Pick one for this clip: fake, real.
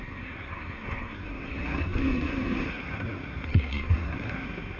fake